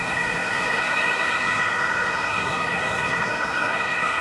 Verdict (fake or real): fake